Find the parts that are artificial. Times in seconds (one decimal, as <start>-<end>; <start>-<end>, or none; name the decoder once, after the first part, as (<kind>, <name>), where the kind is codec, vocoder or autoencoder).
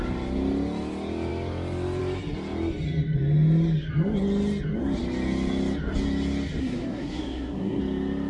6.6-7.8 (codec, SNAC)